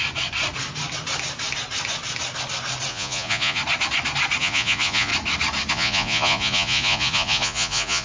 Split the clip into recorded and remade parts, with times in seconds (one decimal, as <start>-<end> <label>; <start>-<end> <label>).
0.0-2.9 recorded; 2.9-3.6 remade; 3.6-4.4 recorded; 4.4-5.1 remade; 5.1-5.7 recorded; 5.7-8.0 remade